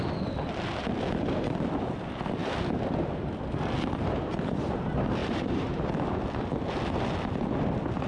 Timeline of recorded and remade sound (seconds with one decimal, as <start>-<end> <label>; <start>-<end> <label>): 0.0-5.2 recorded; 5.2-5.8 remade; 5.8-8.1 recorded